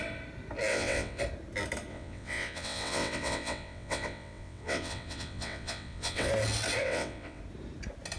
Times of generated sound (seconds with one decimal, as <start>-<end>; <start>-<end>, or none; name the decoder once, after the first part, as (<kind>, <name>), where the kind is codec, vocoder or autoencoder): 0.7-1.2 (vocoder, WaveNeXt); 1.9-6.3; 6.8-7.4